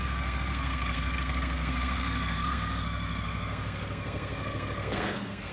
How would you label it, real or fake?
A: fake